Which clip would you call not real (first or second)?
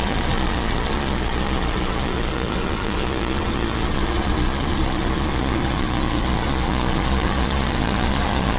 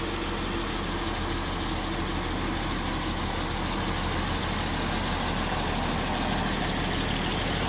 first